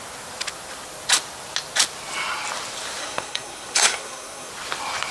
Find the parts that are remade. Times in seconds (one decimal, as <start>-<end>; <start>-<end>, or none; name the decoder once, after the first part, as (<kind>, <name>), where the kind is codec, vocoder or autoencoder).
3.0-4.5 (codec, SNAC)